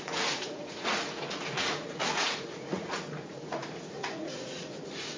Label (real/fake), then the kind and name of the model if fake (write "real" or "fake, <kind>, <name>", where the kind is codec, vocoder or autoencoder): fake, vocoder, Vocos